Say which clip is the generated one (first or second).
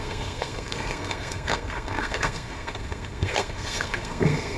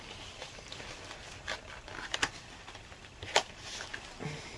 first